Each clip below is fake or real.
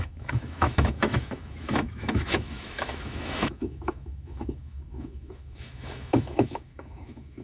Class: fake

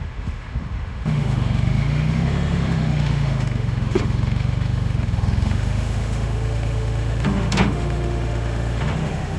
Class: fake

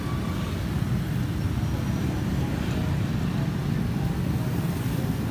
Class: real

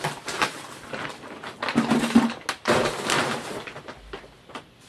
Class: real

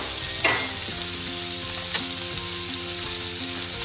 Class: real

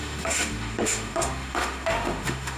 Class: fake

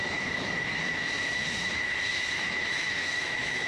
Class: fake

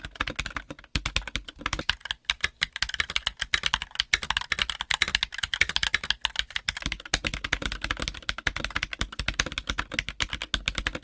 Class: real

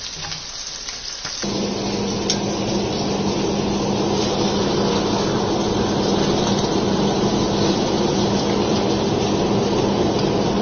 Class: real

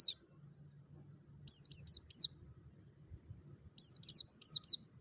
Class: real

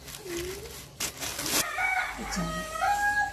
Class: real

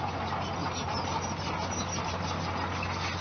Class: real